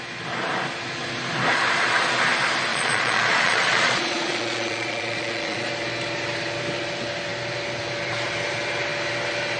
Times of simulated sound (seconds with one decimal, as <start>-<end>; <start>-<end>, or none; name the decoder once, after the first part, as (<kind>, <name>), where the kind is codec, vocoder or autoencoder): 2.7-5.7 (vocoder, Vocos)